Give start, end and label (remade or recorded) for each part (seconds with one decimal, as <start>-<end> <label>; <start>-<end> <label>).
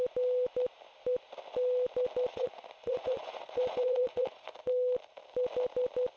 0.0-2.3 recorded; 2.3-4.7 remade; 4.7-6.2 recorded